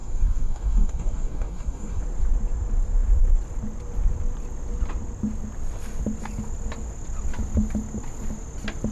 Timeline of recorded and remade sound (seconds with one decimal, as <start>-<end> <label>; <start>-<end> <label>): 0.0-2.0 remade; 2.0-8.9 recorded